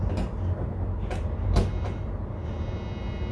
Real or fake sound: real